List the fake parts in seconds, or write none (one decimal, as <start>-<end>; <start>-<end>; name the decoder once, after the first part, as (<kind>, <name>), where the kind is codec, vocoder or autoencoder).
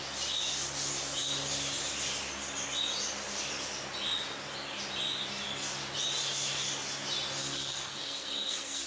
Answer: 7.4-8.9 (codec, SNAC)